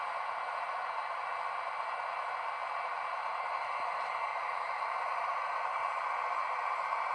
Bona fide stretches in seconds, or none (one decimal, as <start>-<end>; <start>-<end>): 0.0-2.6